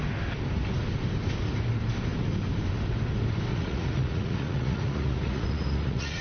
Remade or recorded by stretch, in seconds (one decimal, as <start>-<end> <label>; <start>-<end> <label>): 0.0-3.5 recorded; 3.5-6.2 remade